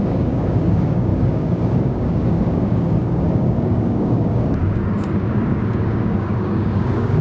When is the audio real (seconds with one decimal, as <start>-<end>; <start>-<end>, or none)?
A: none